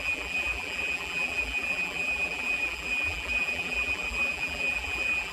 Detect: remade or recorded remade